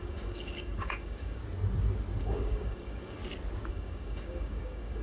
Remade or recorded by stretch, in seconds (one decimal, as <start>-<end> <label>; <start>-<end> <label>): 0.0-1.4 remade; 1.4-2.2 recorded; 2.2-3.2 remade; 3.2-3.7 recorded; 3.7-5.0 remade